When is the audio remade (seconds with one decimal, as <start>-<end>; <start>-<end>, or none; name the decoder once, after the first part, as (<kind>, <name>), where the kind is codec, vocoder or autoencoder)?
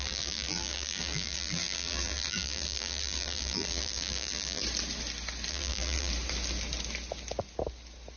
0.0-4.6 (vocoder, BigVGAN v2); 5.5-6.1